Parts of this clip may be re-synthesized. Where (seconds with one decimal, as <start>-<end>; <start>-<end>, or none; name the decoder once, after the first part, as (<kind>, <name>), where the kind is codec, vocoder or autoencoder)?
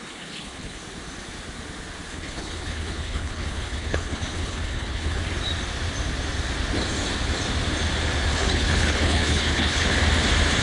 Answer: 0.0-0.8 (codec, HILCodec); 2.1-5.2; 8.3-10.0